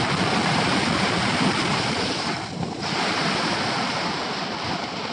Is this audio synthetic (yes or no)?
yes